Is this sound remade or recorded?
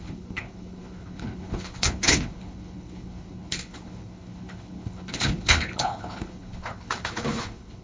remade